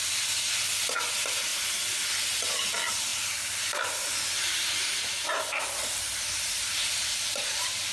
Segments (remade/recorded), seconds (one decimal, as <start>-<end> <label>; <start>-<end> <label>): 0.0-3.1 recorded; 3.1-7.9 remade